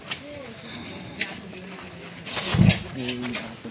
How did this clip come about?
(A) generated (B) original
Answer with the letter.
B